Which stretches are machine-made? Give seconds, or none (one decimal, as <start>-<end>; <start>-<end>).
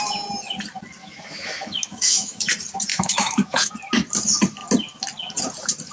1.0-2.5; 2.9-3.7